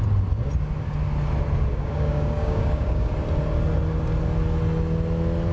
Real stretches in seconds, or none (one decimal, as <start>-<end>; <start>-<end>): 0.0-1.7; 3.1-5.5